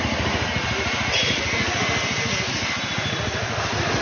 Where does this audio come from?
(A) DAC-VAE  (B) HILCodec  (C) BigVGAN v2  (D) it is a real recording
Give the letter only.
D